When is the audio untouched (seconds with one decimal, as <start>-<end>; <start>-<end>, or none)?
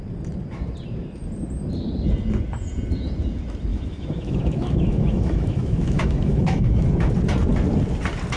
0.0-3.7; 6.9-8.4